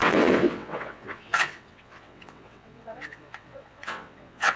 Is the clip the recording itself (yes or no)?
no